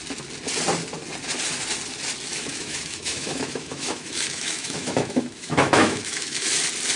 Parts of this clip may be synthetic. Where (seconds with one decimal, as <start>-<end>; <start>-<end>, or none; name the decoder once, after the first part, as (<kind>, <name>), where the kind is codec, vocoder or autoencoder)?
2.3-6.5 (autoencoder, DAC-VAE)